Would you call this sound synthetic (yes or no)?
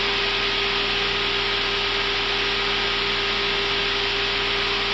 no